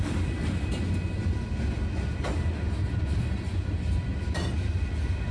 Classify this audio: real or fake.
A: real